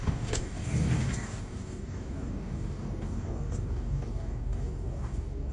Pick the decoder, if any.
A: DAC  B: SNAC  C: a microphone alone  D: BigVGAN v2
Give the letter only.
A